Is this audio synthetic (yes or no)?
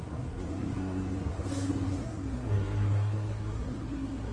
yes